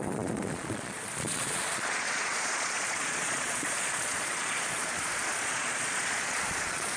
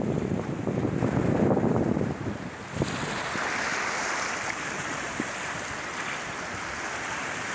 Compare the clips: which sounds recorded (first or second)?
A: second